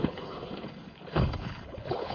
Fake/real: fake